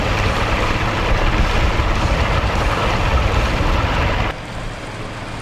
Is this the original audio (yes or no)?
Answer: yes